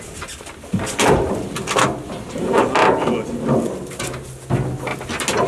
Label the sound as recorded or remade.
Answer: recorded